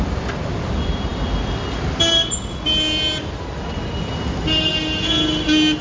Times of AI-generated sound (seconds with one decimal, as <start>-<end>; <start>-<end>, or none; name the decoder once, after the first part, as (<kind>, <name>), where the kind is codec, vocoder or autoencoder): none